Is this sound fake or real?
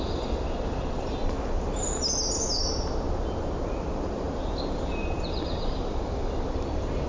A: real